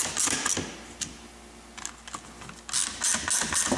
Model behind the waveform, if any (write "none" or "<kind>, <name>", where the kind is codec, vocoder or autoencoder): none